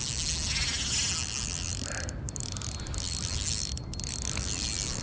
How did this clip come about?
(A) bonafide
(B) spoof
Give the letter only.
A